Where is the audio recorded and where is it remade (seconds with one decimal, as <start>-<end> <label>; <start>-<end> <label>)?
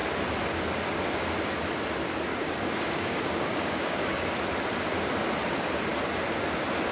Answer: 0.0-2.3 recorded; 2.3-4.3 remade; 4.3-6.9 recorded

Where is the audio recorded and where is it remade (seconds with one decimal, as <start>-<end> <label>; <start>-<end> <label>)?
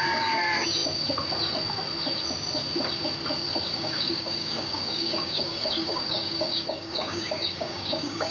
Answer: 0.0-3.7 recorded; 3.7-8.3 remade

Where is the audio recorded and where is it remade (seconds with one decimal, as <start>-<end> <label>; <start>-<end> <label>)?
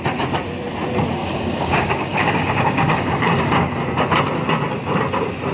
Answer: 0.0-1.2 recorded; 1.2-3.5 remade; 3.5-5.5 recorded